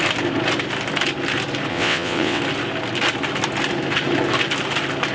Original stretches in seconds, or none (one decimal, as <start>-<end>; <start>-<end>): 0.0-1.7; 2.4-5.1